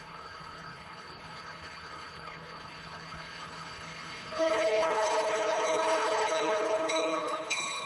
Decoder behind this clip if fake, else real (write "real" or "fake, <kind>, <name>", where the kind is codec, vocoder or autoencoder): fake, codec, HILCodec